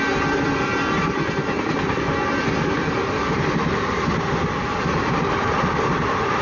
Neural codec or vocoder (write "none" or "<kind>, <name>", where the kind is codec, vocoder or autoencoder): none